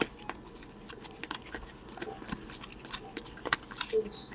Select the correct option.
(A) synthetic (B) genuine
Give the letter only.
B